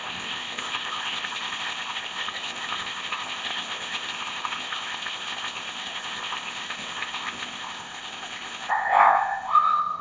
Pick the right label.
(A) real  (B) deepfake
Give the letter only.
B